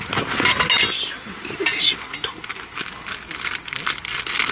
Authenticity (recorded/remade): recorded